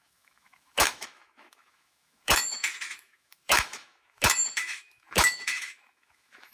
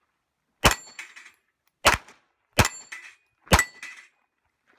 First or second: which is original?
second